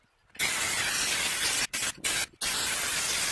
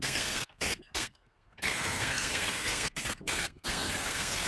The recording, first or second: first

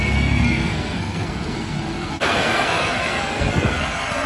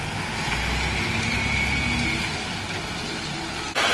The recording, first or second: second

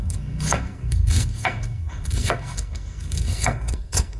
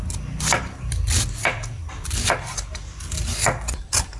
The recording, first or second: second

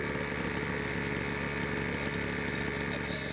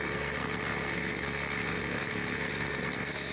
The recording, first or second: first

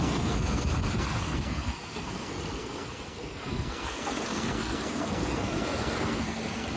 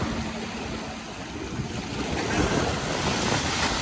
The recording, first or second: second